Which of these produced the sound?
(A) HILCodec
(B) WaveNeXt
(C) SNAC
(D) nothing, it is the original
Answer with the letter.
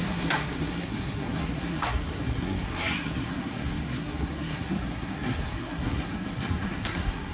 C